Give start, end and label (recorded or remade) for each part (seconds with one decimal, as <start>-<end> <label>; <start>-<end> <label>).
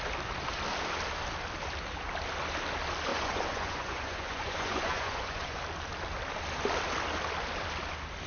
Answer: 0.0-3.1 recorded; 3.1-5.6 remade; 5.6-8.3 recorded